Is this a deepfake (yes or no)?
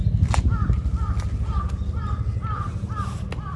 no